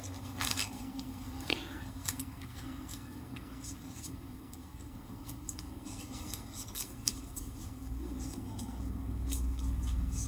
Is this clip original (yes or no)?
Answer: no